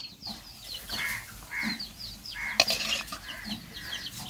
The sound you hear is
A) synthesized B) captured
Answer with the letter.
B